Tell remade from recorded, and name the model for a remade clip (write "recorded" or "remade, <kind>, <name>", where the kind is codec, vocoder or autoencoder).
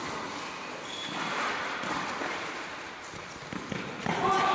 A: recorded